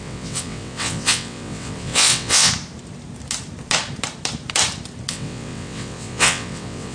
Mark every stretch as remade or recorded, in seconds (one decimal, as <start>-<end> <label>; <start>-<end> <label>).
0.0-2.5 remade; 2.5-5.1 recorded; 5.1-6.9 remade